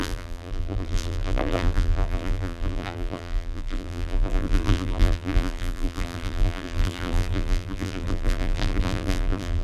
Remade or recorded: remade